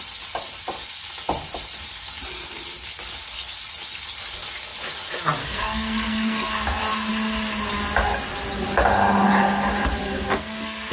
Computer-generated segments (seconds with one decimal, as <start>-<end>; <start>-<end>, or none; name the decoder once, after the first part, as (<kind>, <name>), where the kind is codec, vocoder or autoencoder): 5.4-6.5 (codec, SNAC); 10.0-10.9